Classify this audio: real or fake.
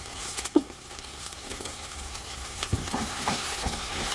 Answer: fake